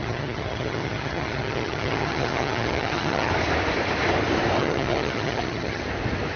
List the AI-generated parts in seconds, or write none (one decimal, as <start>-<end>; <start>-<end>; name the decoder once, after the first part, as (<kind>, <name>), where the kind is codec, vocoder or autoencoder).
0.0-3.3 (vocoder, HiFi-GAN); 4.6-5.8

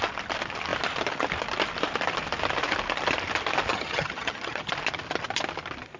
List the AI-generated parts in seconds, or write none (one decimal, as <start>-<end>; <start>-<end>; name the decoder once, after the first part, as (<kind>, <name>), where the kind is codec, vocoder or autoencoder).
3.7-4.7 (vocoder, HiFi-GAN)

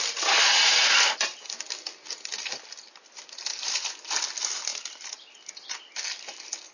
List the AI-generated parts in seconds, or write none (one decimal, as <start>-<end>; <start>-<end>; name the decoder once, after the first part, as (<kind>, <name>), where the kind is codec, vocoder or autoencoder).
none

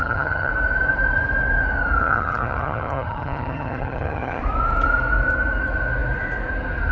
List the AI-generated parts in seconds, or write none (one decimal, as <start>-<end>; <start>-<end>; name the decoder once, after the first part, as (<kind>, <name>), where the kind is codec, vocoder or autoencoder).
0.0-0.5 (vocoder, HiFi-GAN); 2.0-4.4

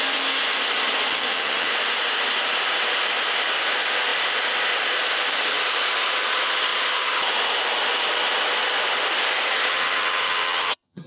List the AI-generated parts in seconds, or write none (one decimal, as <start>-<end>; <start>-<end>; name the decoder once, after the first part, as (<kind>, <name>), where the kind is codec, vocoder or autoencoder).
1.1-1.7 (vocoder, HiFi-GAN); 9.7-11.1

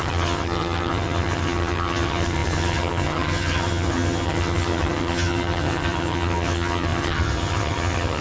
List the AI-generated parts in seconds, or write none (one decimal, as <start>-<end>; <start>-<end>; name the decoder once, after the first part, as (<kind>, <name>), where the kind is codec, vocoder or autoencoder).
0.0-8.2 (vocoder, HiFi-GAN)

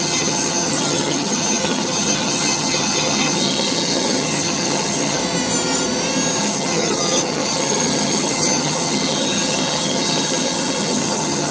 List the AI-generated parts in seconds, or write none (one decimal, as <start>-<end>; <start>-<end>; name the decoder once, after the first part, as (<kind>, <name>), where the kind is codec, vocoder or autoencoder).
0.0-5.2 (vocoder, HiFi-GAN); 6.4-11.5

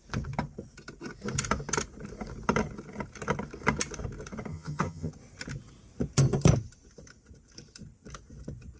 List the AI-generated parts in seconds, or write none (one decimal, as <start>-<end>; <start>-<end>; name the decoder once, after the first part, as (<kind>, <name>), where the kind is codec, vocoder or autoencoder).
4.5-5.1 (vocoder, HiFi-GAN)